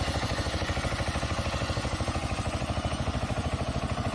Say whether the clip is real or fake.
fake